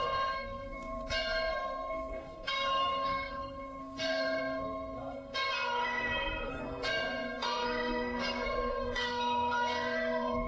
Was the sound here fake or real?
fake